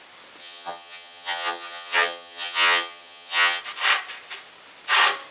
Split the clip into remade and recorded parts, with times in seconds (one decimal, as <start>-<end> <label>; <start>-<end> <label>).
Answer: 0.0-0.4 recorded; 0.4-3.6 remade; 3.6-5.3 recorded